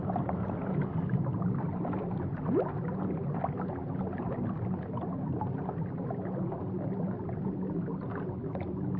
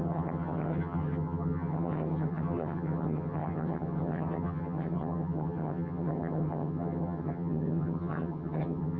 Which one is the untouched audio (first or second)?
first